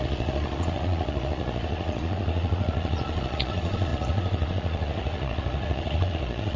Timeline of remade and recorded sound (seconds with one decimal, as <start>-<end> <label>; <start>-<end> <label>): 0.0-6.6 remade